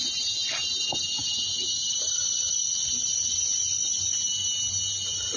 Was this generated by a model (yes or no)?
no